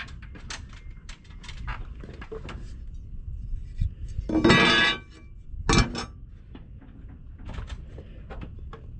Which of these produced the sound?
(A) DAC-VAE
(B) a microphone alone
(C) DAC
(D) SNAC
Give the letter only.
B